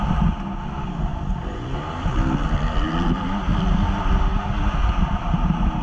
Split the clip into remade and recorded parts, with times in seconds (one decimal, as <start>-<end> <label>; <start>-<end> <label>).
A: 0.0-5.8 recorded